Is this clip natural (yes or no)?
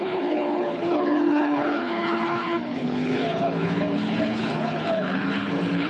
no